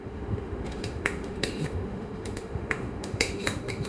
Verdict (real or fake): fake